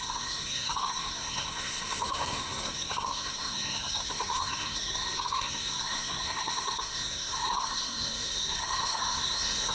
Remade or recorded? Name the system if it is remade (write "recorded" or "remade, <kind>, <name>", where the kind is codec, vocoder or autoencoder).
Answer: remade, codec, SNAC